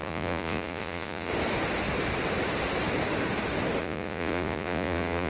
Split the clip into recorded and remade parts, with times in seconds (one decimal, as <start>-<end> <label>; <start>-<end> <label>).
0.0-1.3 remade; 1.3-3.8 recorded; 3.8-5.3 remade